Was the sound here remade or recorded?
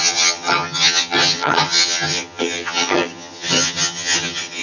remade